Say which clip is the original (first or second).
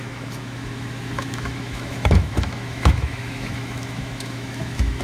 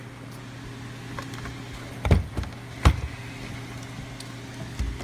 second